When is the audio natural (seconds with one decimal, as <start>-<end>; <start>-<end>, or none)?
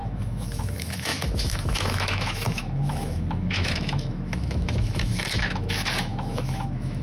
none